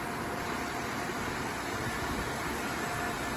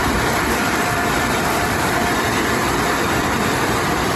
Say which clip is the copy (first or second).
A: second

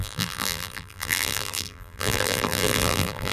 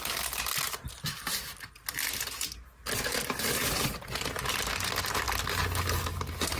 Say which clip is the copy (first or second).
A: first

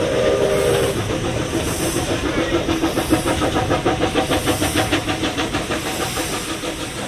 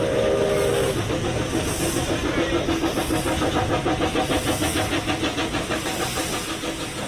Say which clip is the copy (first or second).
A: first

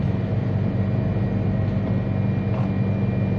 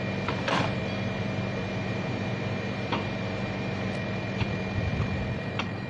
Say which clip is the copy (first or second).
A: second